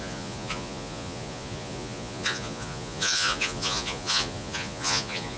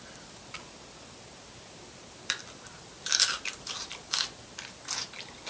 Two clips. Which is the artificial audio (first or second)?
first